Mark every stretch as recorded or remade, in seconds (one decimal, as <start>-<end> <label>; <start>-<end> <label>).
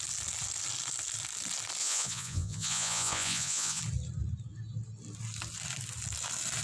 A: 0.0-1.8 recorded; 1.8-3.8 remade; 3.8-6.6 recorded